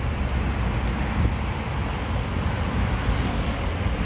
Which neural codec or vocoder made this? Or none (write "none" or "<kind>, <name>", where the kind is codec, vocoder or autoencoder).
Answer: none